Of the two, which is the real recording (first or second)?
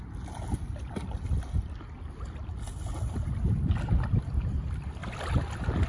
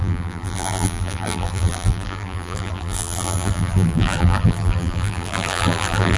first